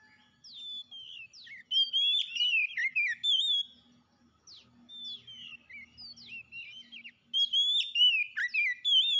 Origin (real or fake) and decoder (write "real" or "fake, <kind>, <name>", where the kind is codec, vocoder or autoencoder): real